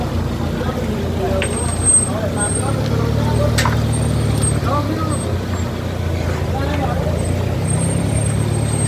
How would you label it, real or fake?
real